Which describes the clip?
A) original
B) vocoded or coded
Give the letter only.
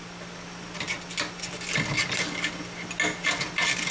A